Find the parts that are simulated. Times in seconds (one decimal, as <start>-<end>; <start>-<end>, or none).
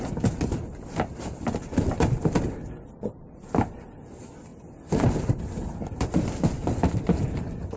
none